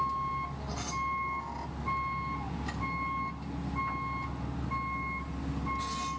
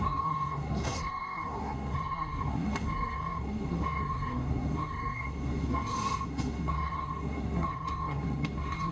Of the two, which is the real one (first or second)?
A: first